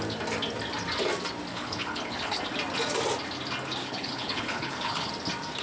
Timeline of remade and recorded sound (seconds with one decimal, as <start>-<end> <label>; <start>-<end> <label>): 0.0-1.5 recorded; 1.5-2.4 remade; 2.4-3.8 recorded; 3.8-5.1 remade; 5.1-5.6 recorded